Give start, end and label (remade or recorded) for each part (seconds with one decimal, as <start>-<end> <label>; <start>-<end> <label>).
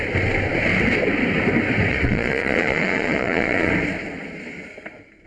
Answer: 0.0-1.9 recorded; 1.9-3.7 remade; 3.7-5.3 recorded